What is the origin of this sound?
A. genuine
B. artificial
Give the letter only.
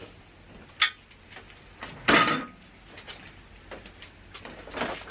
A